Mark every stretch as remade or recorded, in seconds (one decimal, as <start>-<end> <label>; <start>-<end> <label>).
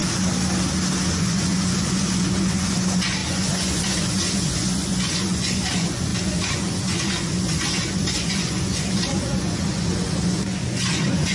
0.0-1.1 recorded; 1.1-11.3 remade